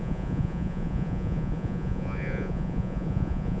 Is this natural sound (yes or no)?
no